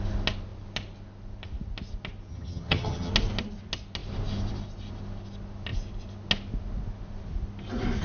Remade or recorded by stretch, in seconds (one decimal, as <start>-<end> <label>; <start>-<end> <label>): 0.0-2.3 recorded; 2.3-3.1 remade; 3.1-8.0 recorded